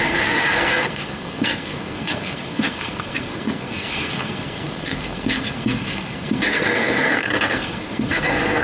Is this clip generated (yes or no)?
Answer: yes